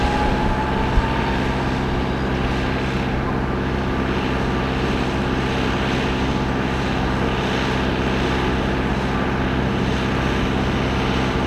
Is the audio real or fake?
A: real